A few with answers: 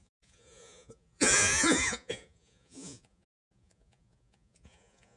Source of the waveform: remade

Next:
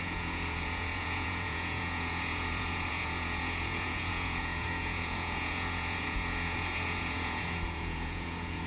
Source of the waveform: remade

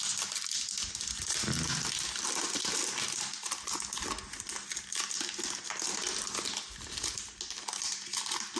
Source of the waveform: recorded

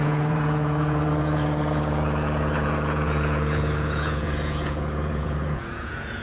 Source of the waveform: remade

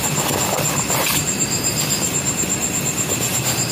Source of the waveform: recorded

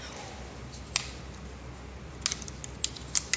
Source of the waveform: recorded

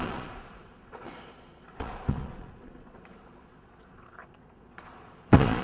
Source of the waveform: remade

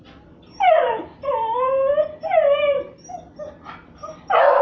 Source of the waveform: recorded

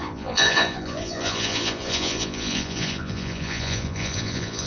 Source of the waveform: remade